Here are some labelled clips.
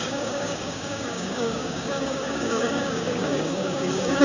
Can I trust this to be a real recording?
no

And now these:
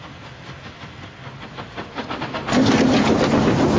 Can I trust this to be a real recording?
yes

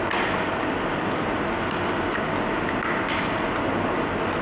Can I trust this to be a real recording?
yes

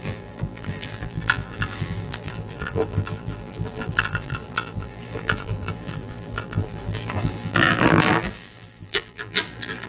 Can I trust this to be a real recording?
no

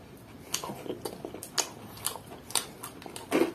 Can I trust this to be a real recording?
yes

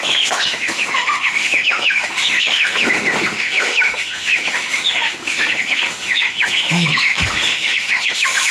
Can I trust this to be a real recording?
no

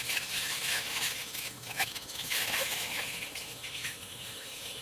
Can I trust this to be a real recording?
no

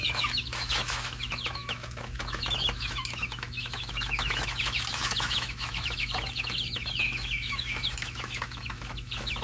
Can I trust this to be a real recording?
no